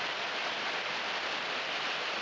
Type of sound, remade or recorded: recorded